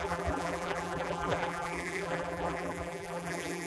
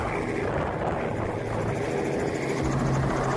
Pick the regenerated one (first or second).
first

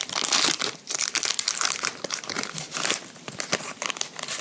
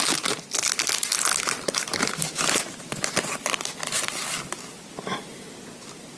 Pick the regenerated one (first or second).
first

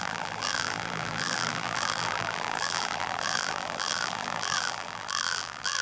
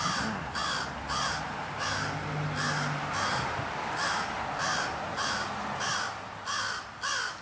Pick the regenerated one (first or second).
first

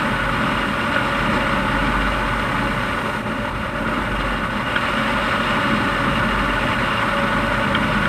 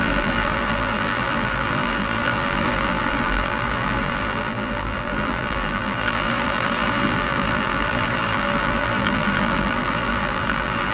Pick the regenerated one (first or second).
second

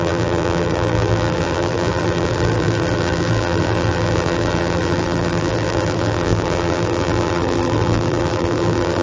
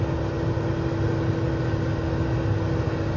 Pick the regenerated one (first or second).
first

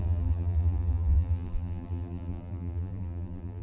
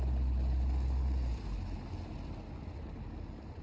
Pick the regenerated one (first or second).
first